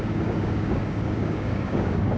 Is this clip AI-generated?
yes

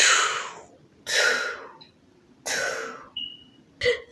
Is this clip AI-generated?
no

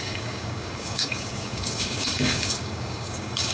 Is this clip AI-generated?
yes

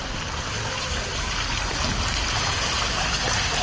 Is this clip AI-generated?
no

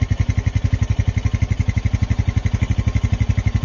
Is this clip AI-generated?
no